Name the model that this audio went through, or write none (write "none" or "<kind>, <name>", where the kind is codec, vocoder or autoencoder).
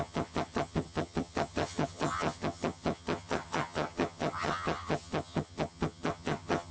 vocoder, HiFi-GAN